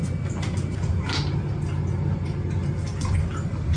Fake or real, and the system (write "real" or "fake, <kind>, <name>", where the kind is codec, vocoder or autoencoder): real